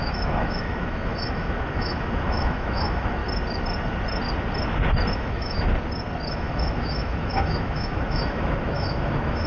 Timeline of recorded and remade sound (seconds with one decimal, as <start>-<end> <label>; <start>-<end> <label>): 0.0-3.2 remade; 3.2-5.1 recorded; 5.1-5.7 remade; 5.7-6.3 recorded; 6.3-9.5 remade